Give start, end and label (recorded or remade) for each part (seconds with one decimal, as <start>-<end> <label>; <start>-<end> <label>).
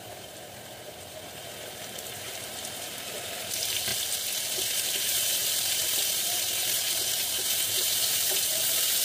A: 0.0-3.9 remade; 3.9-4.8 recorded; 4.8-9.0 remade